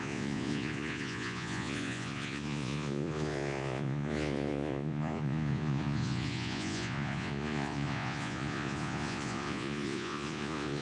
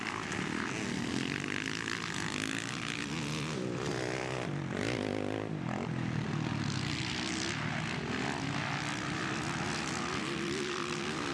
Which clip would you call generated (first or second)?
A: first